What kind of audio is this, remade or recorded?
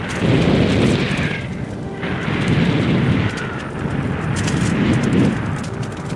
recorded